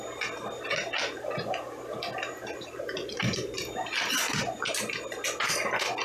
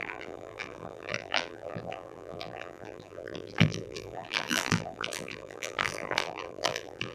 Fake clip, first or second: second